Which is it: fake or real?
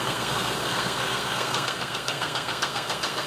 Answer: fake